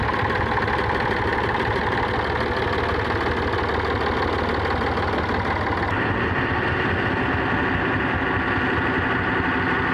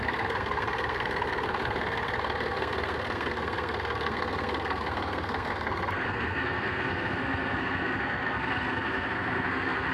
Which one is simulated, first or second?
second